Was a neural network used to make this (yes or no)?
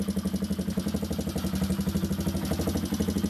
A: no